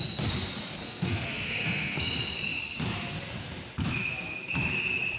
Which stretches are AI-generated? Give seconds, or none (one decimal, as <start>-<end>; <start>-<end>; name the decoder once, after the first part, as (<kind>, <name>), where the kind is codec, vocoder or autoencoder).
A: 0.8-2.0 (codec, SNAC)